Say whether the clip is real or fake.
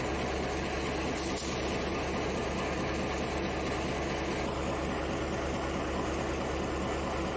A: real